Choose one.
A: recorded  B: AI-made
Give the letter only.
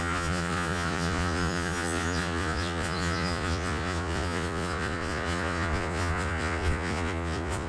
B